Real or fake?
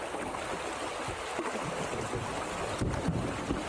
real